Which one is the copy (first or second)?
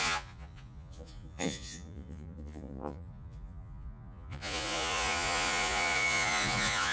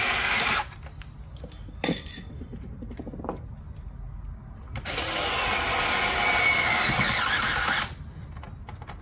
first